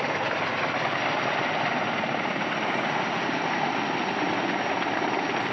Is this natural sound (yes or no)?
yes